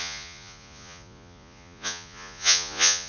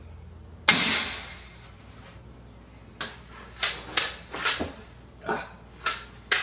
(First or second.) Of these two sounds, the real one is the second